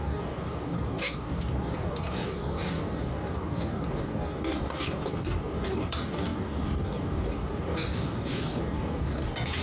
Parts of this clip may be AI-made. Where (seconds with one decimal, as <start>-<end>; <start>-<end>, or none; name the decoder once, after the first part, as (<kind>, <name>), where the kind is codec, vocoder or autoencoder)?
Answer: 0.0-9.6 (codec, DAC)